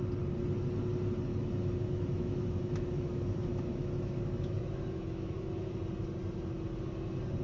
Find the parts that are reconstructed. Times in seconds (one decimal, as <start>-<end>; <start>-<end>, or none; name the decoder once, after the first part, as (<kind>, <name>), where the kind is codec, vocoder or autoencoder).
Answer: 1.3-5.7 (autoencoder, DAC-VAE)